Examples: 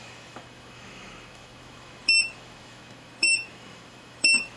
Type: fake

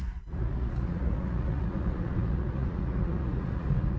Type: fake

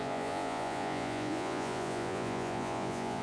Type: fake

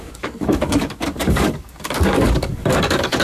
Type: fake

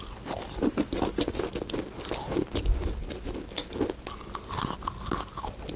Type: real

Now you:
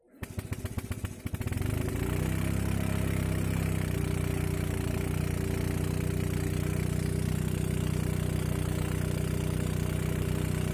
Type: real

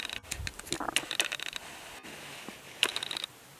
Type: real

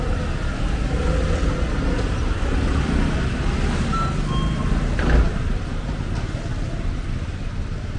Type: real